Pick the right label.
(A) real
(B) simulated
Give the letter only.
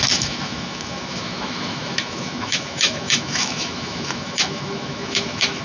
B